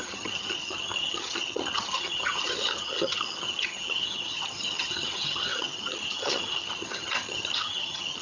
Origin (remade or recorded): remade